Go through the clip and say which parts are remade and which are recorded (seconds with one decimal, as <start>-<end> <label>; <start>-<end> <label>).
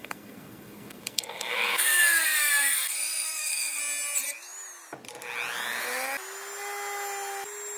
0.0-3.8 remade; 3.8-7.8 recorded